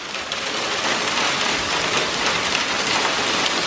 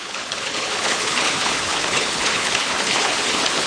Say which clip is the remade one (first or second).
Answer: second